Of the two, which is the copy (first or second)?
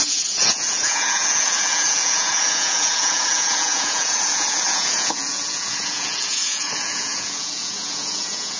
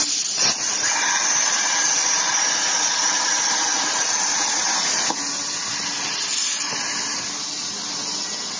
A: first